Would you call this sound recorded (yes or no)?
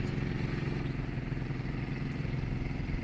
yes